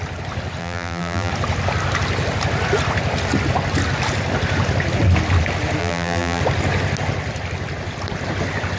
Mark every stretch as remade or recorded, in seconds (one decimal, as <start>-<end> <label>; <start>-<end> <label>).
0.0-0.6 recorded; 0.6-1.3 remade; 1.3-5.8 recorded; 5.8-6.4 remade; 6.4-8.8 recorded